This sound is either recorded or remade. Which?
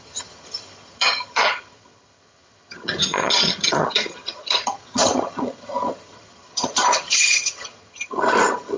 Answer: remade